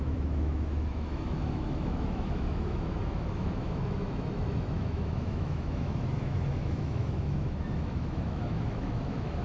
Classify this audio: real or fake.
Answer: fake